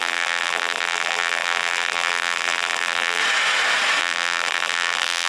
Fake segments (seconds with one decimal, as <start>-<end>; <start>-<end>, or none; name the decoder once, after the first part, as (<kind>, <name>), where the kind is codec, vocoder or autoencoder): 0.0-3.2 (vocoder, BigVGAN v2); 4.0-5.3